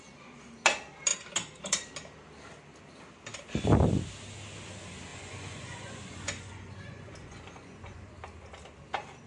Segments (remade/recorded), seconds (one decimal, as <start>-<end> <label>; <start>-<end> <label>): 0.0-5.1 recorded; 5.1-8.1 remade; 8.1-9.3 recorded